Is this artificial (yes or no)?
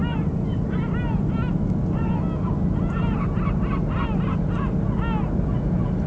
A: no